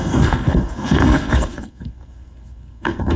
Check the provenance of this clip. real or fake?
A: fake